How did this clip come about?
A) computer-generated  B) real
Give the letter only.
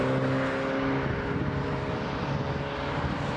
B